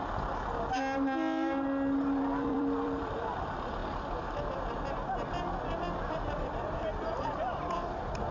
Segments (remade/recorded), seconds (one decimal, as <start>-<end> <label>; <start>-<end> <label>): 0.0-2.2 recorded; 2.2-3.8 remade; 3.8-6.0 recorded; 6.0-8.3 remade